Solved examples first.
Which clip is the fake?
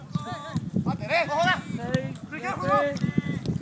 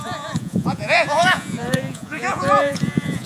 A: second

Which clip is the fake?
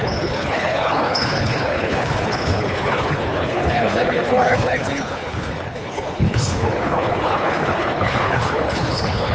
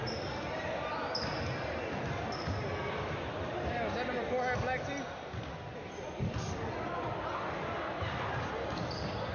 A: first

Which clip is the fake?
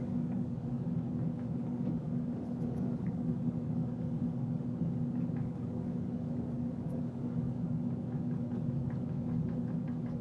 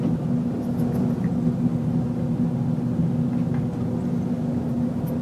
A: first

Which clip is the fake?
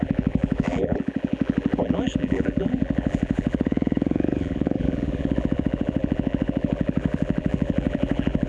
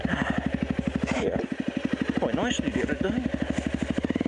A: first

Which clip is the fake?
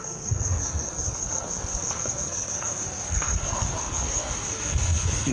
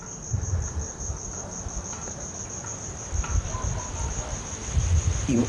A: first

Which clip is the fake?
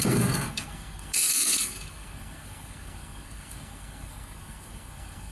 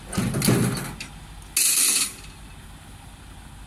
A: first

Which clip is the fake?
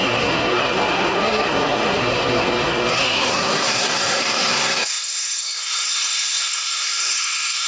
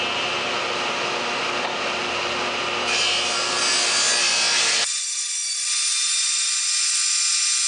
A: first